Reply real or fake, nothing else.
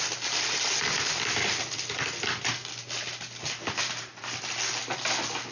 real